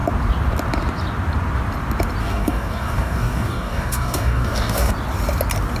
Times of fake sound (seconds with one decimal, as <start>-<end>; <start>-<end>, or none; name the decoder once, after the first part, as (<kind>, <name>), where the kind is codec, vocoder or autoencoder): 2.2-4.9 (codec, DAC)